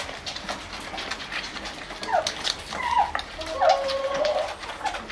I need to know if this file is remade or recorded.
recorded